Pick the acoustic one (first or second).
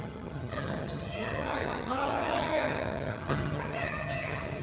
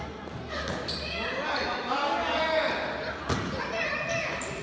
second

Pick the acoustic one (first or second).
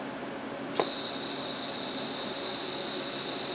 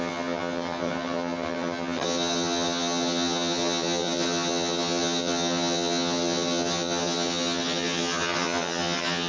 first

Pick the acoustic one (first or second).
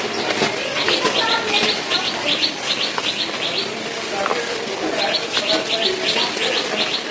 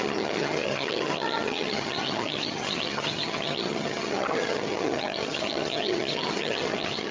first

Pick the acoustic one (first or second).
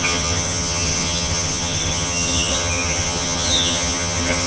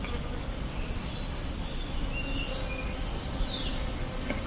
second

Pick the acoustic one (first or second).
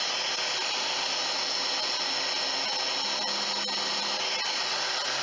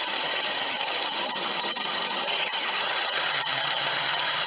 first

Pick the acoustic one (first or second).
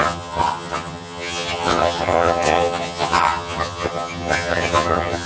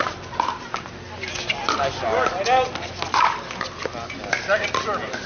second